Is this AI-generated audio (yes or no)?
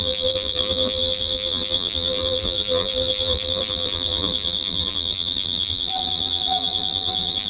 yes